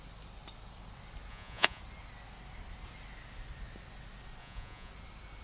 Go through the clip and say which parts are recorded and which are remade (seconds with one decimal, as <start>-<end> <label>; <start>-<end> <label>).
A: 0.0-1.3 recorded; 1.3-1.8 remade; 1.8-4.4 recorded; 4.4-4.9 remade; 4.9-5.4 recorded